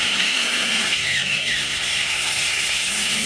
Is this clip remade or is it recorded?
remade